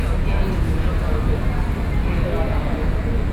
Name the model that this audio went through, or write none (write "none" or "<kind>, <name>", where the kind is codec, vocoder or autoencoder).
none